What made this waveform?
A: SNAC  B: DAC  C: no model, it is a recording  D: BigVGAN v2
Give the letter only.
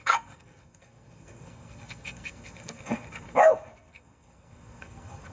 A